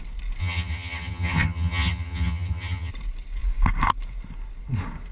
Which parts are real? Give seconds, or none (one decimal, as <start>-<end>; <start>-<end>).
0.0-0.4; 2.9-5.1